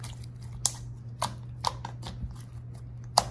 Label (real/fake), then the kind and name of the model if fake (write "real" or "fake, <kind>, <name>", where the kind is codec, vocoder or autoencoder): real